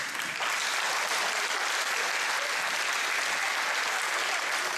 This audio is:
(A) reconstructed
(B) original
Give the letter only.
B